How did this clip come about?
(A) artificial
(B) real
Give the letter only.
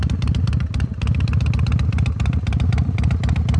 B